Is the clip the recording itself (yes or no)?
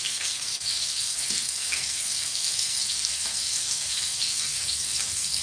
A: no